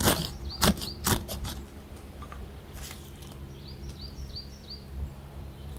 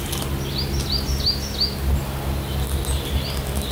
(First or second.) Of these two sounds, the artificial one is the first